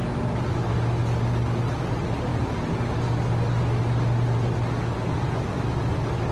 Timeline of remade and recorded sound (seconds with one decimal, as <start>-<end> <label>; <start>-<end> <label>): 0.0-6.3 recorded